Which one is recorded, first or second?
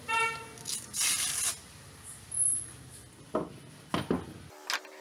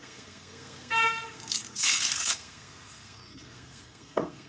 first